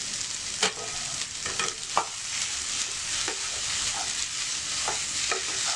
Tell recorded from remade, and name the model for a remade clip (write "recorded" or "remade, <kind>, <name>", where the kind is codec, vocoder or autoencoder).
recorded